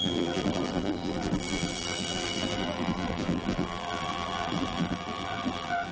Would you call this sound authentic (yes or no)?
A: no